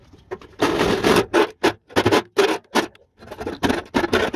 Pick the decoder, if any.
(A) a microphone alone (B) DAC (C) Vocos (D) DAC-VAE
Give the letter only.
A